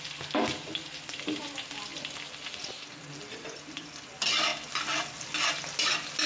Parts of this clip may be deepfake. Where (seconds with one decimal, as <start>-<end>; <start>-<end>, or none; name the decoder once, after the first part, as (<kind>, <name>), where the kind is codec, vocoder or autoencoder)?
none